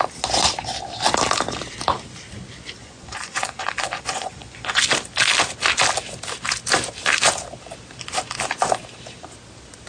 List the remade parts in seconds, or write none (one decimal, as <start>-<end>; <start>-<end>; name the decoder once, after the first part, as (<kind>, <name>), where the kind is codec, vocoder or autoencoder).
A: 2.8-4.8 (vocoder, Vocos)

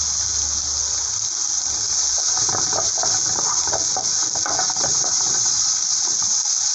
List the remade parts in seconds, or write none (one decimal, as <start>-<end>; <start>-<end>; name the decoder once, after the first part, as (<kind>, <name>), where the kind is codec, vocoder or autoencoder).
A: 4.8-5.7 (vocoder, Vocos)

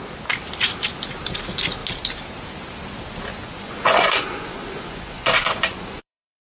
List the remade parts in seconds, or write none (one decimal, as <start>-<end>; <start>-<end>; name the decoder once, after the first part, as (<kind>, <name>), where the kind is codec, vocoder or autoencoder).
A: 3.3-6.4 (vocoder, Vocos)

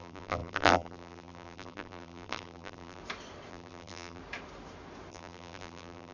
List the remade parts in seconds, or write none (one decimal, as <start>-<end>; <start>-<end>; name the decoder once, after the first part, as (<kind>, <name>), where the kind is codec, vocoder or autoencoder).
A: 0.0-3.0 (vocoder, BigVGAN v2); 3.5-4.2; 5.1-6.1

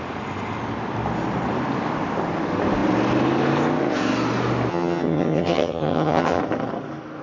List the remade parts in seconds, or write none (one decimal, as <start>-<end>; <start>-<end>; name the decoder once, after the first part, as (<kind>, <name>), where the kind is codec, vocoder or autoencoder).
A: 4.7-6.4 (vocoder, HiFi-GAN)

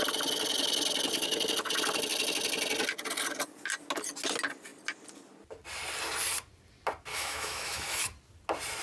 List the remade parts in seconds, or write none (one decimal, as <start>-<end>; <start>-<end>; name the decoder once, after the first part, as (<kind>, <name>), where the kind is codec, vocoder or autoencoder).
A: 7.1-8.0 (autoencoder, DAC-VAE)

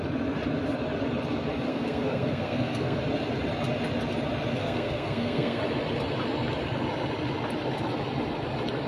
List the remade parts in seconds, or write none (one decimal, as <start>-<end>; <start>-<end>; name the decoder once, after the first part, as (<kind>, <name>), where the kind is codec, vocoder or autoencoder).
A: 1.7-3.0 (codec, SNAC); 4.6-5.6

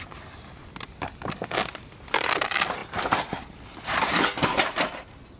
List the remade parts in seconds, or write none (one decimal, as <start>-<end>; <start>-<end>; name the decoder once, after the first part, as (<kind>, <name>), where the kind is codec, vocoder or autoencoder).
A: none